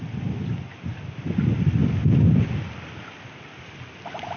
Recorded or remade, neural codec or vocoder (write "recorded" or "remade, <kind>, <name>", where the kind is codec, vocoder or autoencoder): recorded